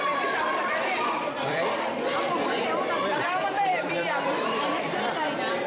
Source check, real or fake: fake